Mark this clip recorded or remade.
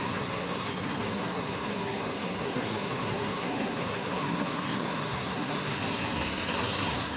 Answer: remade